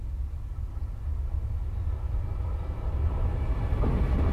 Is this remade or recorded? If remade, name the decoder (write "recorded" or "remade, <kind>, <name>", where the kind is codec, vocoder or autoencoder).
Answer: recorded